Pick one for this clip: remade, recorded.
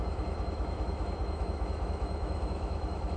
remade